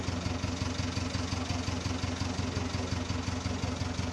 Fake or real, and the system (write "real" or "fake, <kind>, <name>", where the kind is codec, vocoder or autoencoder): real